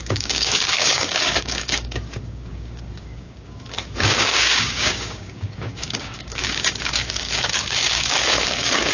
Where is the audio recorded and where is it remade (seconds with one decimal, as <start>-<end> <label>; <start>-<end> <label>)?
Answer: 0.0-8.9 remade